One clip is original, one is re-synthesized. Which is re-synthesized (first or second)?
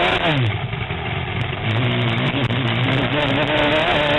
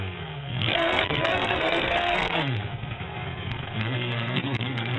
second